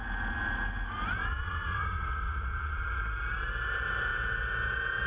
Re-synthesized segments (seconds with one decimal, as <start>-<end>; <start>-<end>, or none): 1.3-3.0